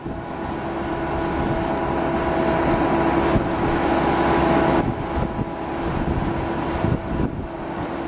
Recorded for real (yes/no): yes